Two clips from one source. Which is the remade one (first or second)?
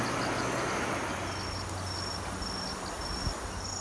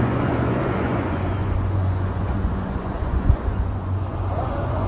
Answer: second